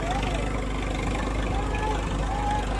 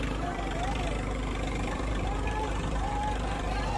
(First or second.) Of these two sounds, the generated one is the second